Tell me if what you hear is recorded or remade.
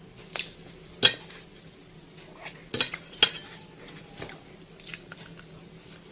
recorded